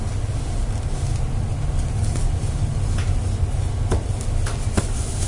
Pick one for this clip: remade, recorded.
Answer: recorded